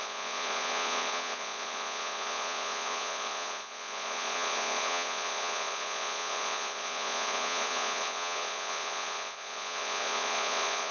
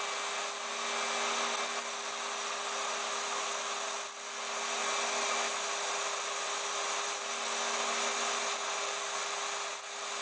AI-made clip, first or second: first